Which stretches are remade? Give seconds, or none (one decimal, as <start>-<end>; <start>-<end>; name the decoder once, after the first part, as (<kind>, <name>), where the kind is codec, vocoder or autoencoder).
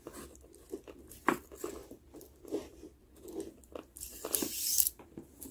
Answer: 1.8-5.0 (vocoder, BigVGAN v2)